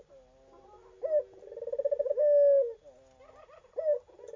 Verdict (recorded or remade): recorded